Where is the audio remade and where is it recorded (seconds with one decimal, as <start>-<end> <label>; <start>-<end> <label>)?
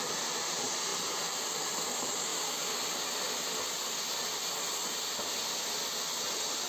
0.0-2.3 remade; 2.3-4.9 recorded; 4.9-5.4 remade; 5.4-6.7 recorded